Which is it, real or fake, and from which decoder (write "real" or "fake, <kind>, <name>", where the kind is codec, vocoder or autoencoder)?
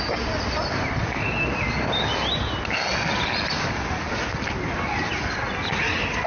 real